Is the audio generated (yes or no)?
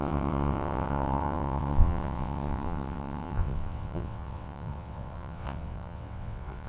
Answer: yes